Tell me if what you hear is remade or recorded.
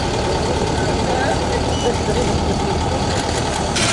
recorded